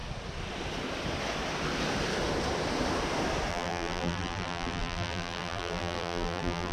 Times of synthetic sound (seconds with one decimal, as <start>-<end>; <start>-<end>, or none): 3.5-6.7